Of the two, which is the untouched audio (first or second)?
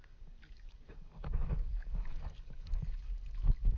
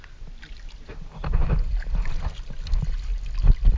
second